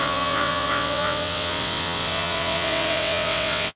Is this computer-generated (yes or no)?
yes